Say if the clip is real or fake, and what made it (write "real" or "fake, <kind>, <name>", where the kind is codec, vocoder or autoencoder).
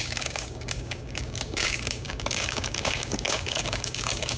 fake, codec, DAC